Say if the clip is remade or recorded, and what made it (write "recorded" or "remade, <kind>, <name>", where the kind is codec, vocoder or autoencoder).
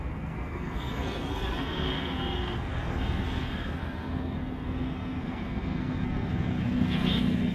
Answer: remade, codec, SNAC